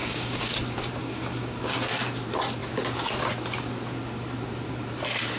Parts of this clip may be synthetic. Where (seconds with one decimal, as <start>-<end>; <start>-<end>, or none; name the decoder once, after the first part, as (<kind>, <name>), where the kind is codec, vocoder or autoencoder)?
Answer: 0.0-0.5 (codec, DAC); 1.0-1.6